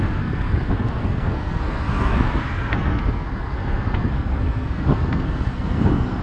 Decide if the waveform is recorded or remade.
remade